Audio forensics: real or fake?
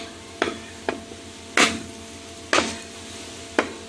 real